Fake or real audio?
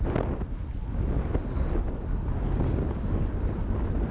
real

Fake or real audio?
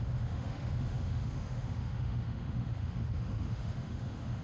fake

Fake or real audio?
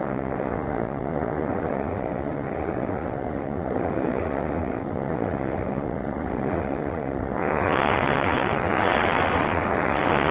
fake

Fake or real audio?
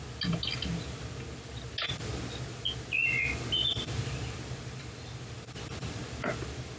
real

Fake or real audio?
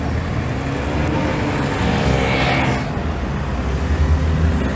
real